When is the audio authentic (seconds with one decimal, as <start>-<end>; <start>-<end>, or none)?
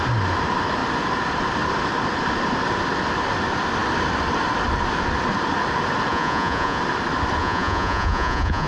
0.0-6.1; 6.8-7.4